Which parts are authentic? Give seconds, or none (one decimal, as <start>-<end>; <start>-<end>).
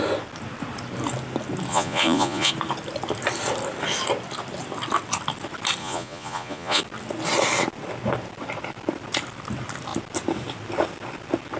0.0-1.7; 2.5-5.8; 6.8-11.6